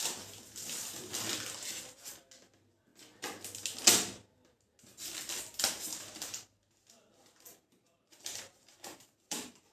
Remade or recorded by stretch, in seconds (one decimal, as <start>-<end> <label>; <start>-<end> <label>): 0.0-5.9 recorded; 5.9-9.7 remade